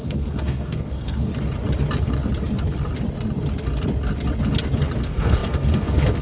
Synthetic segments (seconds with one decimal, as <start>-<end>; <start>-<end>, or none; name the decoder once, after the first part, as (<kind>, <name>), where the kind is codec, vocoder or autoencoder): 0.0-1.3 (codec, SNAC); 5.0-6.2